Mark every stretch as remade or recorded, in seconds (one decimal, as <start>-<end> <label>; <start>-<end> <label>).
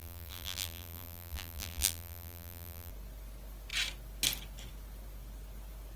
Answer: 0.0-2.9 remade; 2.9-6.0 recorded